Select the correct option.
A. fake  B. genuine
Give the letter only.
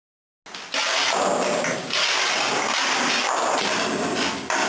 B